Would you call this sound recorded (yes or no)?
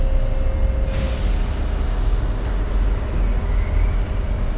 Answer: yes